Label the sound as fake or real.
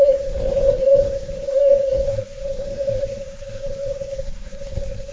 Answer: fake